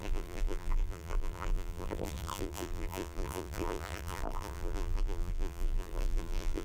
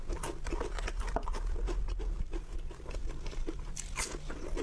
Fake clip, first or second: first